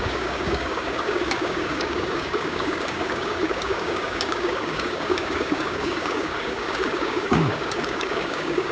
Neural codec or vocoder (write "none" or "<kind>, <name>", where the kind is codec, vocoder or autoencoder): codec, DAC